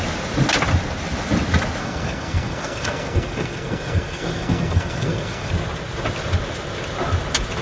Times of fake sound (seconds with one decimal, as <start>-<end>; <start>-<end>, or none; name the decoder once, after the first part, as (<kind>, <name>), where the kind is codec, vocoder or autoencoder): 1.8-5.5 (codec, SNAC)